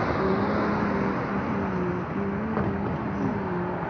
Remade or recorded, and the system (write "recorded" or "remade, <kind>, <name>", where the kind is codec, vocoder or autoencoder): recorded